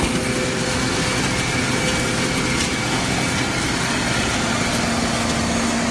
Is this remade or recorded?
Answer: recorded